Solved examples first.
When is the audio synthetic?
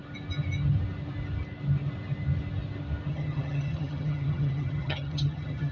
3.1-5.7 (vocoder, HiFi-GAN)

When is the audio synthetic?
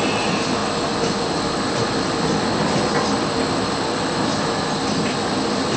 none